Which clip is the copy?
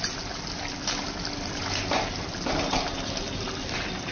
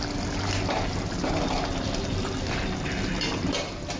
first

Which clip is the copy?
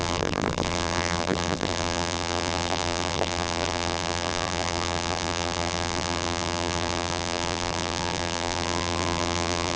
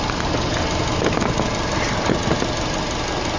first